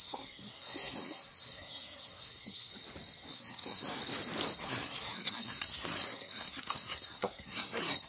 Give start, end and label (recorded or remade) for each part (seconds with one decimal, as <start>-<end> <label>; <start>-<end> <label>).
0.0-2.7 remade; 2.7-3.3 recorded; 3.3-4.0 remade; 4.0-4.6 recorded; 4.6-8.1 remade